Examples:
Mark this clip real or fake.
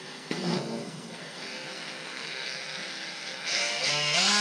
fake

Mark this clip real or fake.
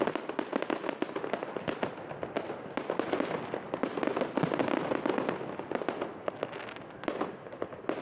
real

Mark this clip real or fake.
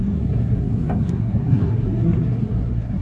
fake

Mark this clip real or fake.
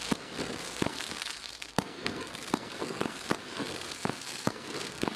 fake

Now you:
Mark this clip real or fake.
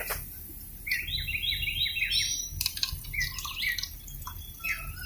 real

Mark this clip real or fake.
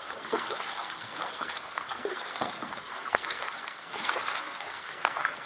fake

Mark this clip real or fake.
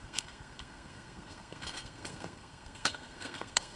fake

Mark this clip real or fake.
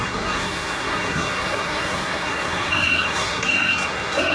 fake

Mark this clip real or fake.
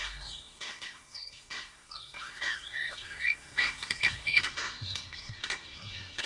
fake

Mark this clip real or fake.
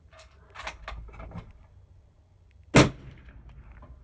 real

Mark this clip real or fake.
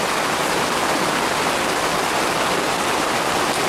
real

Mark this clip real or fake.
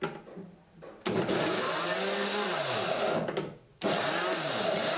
real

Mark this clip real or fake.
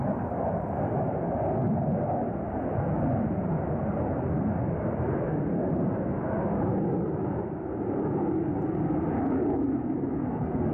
real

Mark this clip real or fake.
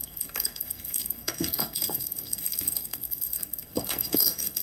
fake